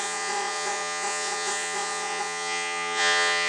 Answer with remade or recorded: remade